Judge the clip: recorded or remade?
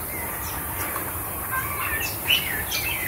recorded